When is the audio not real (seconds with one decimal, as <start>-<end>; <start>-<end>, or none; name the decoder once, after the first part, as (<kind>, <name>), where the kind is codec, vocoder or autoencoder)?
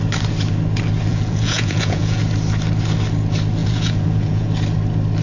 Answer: 1.1-2.2 (vocoder, Vocos); 3.6-4.5